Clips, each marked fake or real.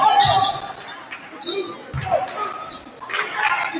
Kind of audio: real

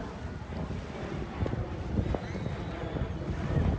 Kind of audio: real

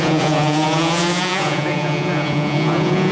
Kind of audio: fake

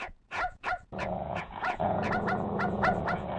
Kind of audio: fake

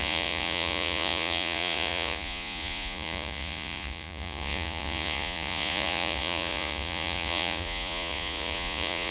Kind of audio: fake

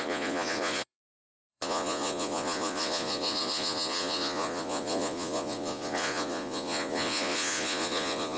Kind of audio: fake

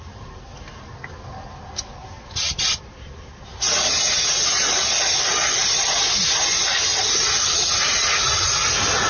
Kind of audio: real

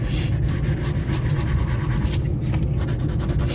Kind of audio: real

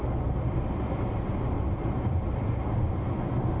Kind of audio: real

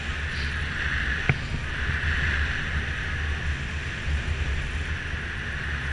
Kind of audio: real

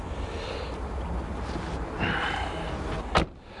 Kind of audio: real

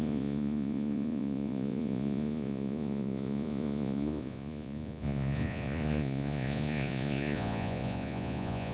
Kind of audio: fake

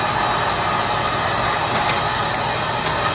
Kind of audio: real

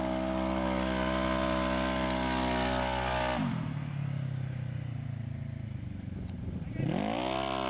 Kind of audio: real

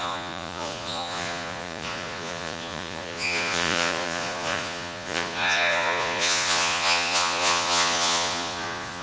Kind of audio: fake